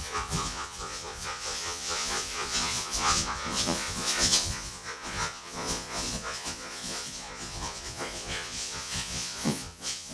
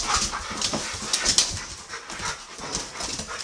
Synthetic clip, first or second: first